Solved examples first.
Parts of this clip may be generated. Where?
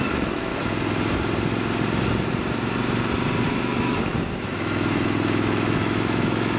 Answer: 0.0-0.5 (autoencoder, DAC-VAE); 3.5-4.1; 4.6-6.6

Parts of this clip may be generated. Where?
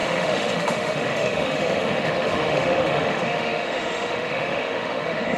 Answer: 0.0-5.4 (autoencoder, DAC-VAE)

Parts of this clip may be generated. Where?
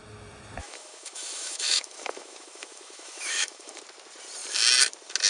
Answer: 0.6-3.8 (autoencoder, DAC-VAE)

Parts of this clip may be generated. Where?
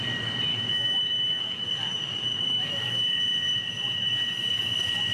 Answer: 0.5-3.6 (autoencoder, DAC-VAE)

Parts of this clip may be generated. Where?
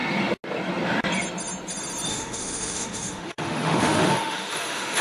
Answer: 2.1-5.0 (autoencoder, DAC-VAE)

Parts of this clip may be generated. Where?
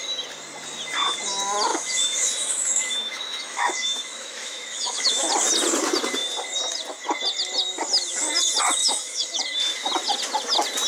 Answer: 1.7-5.3 (autoencoder, DAC-VAE); 8.8-9.4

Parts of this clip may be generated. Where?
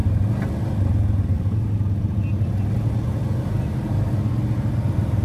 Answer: none